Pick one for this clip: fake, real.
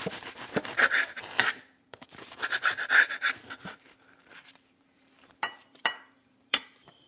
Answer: fake